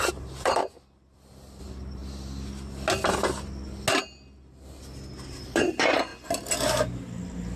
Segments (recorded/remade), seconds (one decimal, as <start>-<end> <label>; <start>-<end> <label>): 0.0-0.6 remade; 0.6-1.6 recorded; 1.6-2.0 remade; 2.0-5.3 recorded; 5.3-6.1 remade; 6.1-7.6 recorded